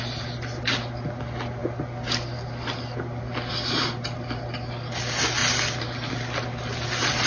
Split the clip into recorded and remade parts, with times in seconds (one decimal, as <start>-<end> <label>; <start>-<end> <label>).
0.0-7.3 recorded